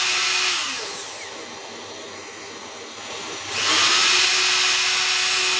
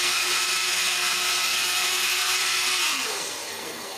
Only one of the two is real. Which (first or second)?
first